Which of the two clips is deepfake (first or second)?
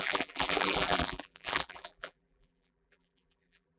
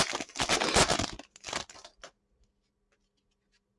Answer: first